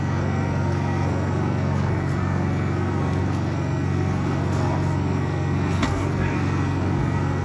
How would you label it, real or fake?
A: fake